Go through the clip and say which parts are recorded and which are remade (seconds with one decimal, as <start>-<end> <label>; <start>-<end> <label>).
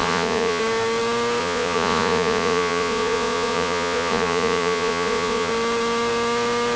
0.0-0.6 remade; 0.6-1.4 recorded; 1.4-5.5 remade; 5.5-6.8 recorded